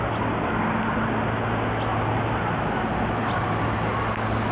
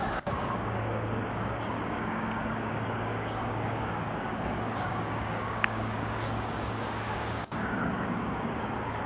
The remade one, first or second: second